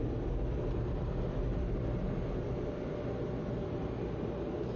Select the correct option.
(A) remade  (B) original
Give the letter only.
B